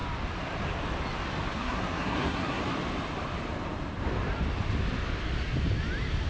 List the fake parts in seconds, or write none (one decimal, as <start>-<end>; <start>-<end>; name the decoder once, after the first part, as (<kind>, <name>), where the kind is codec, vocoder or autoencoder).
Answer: 1.5-2.6 (codec, SNAC)